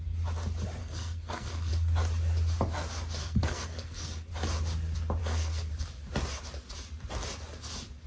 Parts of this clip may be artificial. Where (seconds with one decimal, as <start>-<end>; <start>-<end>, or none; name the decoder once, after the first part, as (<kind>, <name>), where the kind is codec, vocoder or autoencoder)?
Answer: 0.8-1.7 (codec, SNAC); 3.2-4.3; 5.2-5.7